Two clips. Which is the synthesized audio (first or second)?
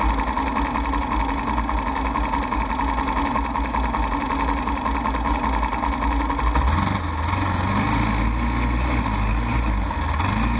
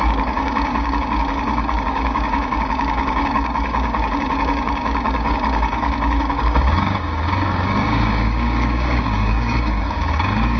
second